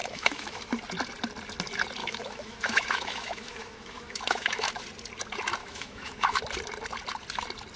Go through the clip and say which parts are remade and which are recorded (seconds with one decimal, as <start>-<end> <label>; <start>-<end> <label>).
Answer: 0.0-0.6 remade; 0.6-2.0 recorded; 2.0-4.8 remade; 4.8-5.6 recorded; 5.6-6.4 remade; 6.4-7.8 recorded